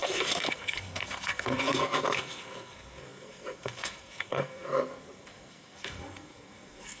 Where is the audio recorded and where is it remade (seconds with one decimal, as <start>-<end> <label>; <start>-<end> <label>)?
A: 0.0-7.0 remade